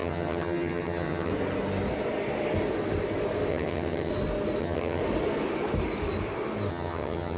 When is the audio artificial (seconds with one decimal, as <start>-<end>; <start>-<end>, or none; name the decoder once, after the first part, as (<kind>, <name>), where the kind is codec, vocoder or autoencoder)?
0.0-1.3 (vocoder, HiFi-GAN); 3.5-4.1; 4.6-5.0; 6.7-7.4